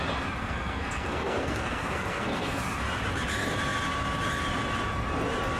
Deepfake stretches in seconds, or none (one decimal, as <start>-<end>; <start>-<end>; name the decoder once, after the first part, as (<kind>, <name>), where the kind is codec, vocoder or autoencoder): 0.4-2.6 (codec, SNAC)